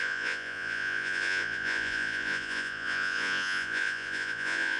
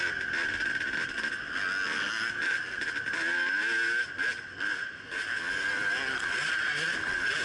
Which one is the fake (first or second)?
first